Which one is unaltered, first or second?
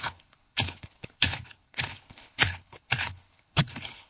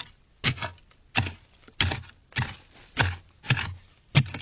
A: second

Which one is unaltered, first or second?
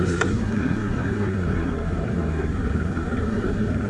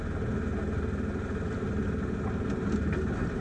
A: second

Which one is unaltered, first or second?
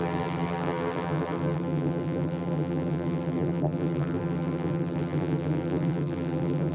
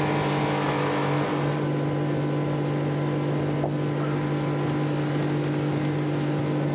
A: second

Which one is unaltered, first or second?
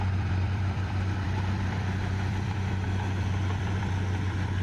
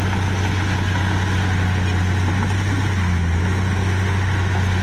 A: second